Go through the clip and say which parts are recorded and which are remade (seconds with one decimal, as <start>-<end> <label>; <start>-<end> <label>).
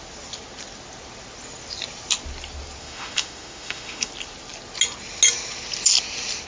0.0-2.8 recorded; 2.8-4.1 remade; 4.1-6.5 recorded